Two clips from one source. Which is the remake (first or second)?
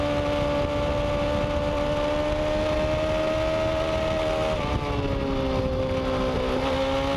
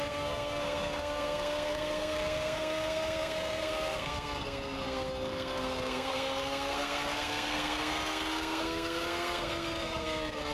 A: second